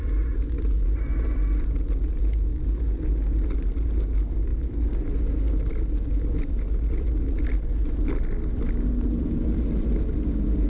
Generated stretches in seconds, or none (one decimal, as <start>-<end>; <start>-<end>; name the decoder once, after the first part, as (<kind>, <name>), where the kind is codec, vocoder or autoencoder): none